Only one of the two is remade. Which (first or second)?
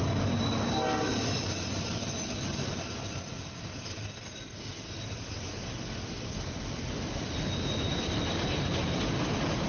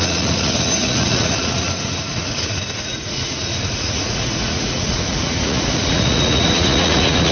second